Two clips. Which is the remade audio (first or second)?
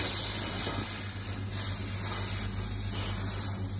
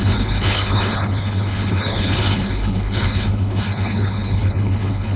second